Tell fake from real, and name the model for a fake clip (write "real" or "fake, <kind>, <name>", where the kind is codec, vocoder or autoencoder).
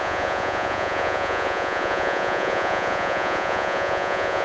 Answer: fake, vocoder, Vocos